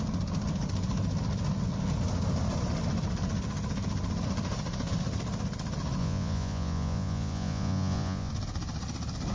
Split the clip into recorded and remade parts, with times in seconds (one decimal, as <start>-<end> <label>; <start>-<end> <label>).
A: 0.0-6.0 recorded; 6.0-8.3 remade; 8.3-9.3 recorded